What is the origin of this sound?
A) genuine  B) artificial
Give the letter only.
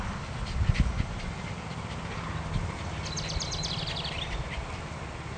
A